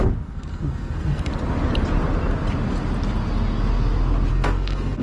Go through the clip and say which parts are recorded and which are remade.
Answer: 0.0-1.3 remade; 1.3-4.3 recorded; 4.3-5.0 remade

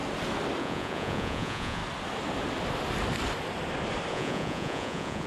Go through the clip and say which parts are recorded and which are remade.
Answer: 0.0-0.6 recorded; 0.6-1.8 remade; 1.8-4.1 recorded; 4.1-5.3 remade